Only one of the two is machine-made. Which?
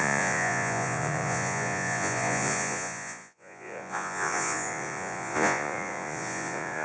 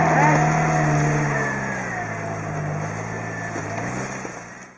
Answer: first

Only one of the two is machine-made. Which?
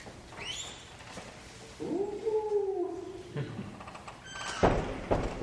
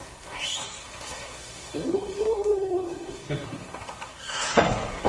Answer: second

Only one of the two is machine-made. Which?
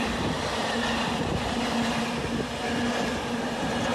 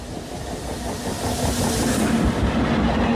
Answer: first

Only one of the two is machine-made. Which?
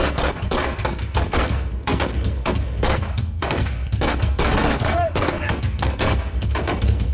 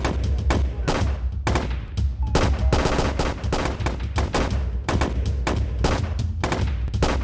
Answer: first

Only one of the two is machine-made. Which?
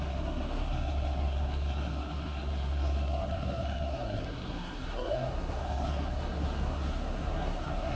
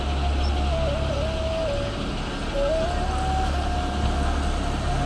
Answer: first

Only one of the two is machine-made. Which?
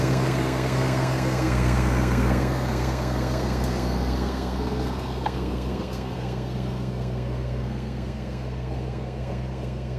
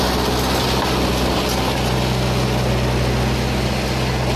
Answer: first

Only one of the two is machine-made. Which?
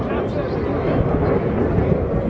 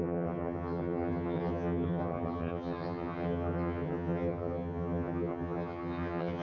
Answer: second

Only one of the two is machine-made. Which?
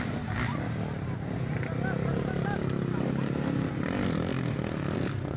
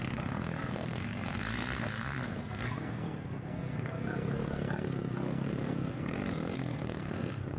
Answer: second